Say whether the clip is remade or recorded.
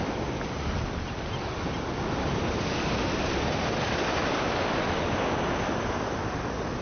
recorded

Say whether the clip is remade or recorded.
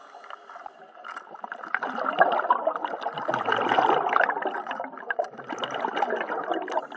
recorded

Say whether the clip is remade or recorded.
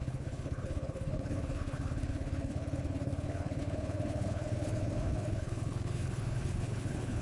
remade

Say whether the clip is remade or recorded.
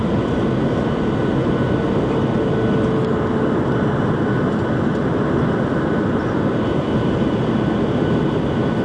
recorded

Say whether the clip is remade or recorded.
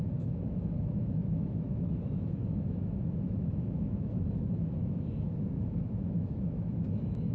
remade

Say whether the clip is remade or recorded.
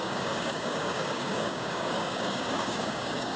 remade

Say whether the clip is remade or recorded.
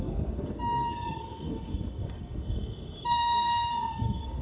remade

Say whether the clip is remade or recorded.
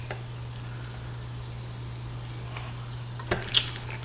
recorded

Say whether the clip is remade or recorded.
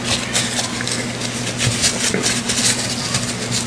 recorded